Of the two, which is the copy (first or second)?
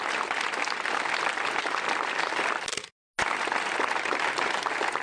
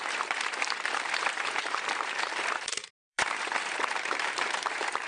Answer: second